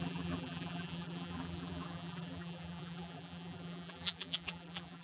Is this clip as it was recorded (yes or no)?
no